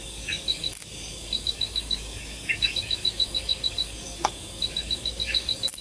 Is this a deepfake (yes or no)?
yes